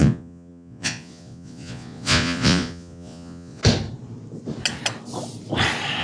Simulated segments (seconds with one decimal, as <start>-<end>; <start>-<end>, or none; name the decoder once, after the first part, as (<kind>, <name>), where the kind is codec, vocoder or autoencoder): 0.0-3.6 (vocoder, Vocos)